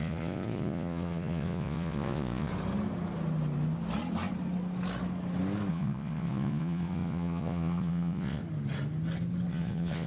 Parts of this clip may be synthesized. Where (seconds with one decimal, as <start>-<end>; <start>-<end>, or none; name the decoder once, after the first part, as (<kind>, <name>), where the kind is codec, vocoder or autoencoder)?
0.0-2.5 (vocoder, Vocos); 5.7-8.4; 9.5-10.1